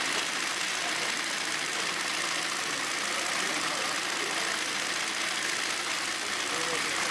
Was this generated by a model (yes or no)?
no